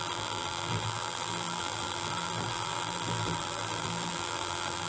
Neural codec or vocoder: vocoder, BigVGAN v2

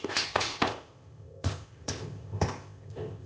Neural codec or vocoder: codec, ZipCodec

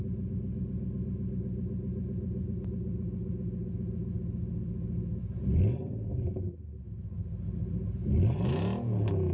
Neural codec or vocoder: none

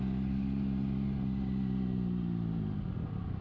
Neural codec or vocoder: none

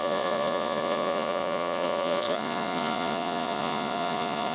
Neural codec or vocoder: vocoder, Vocos